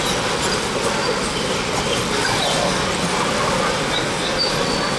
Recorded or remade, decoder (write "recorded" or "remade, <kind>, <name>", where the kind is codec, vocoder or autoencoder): recorded